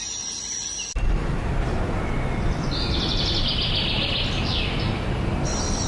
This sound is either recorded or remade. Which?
recorded